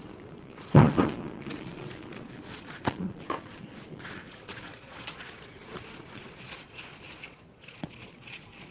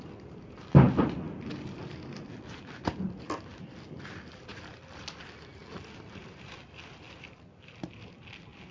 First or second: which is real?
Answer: second